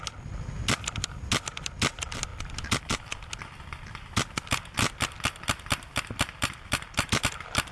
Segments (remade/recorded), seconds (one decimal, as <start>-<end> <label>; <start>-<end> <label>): 0.0-7.7 recorded